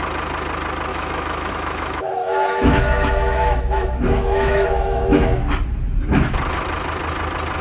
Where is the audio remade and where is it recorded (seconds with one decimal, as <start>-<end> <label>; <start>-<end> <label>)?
0.0-0.9 recorded; 0.9-5.4 remade; 5.4-7.6 recorded